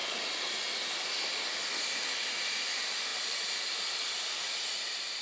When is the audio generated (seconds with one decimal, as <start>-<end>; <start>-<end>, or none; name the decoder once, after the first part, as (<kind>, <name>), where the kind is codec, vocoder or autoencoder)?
none